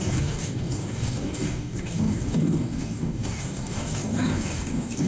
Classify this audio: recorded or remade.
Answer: remade